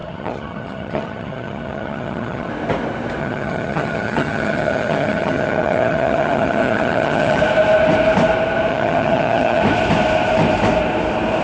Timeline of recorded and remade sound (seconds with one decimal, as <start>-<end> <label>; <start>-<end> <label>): 0.0-2.5 remade; 2.5-3.2 recorded; 3.2-7.4 remade; 7.4-8.7 recorded; 8.7-9.6 remade; 9.6-11.4 recorded